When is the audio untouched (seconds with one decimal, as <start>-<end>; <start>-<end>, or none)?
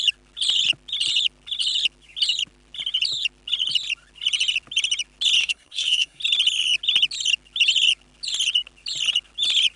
0.0-5.4; 6.2-9.8